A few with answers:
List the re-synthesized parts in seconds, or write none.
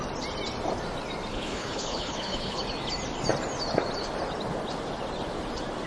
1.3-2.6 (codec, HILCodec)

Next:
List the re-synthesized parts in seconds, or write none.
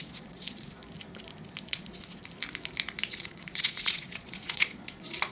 0.0-0.8 (vocoder, Vocos); 1.6-2.2; 3.1-5.3